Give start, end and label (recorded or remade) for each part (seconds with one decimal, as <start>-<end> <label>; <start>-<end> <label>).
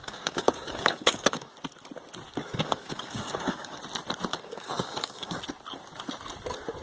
0.0-1.5 remade; 1.5-2.4 recorded; 2.4-3.8 remade; 3.8-4.3 recorded; 4.3-5.4 remade; 5.4-6.8 recorded